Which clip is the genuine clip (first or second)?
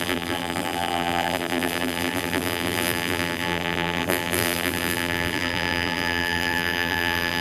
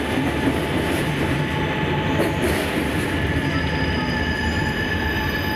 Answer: second